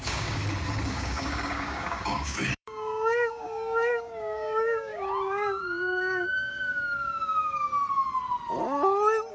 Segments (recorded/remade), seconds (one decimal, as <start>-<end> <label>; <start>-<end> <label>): 0.0-0.4 remade; 0.4-0.9 recorded; 0.9-7.7 remade; 7.7-9.3 recorded